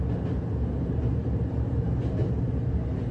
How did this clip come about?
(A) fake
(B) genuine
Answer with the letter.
B